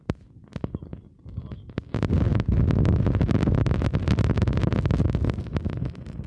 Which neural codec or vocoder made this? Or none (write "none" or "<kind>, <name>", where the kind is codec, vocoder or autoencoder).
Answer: none